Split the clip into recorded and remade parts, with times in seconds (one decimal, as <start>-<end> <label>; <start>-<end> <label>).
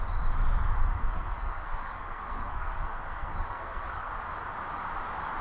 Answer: 0.0-0.9 recorded; 0.9-4.1 remade; 4.1-5.4 recorded